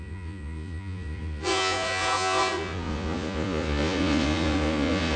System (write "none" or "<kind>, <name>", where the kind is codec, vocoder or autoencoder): vocoder, Vocos